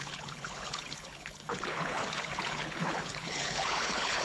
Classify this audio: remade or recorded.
remade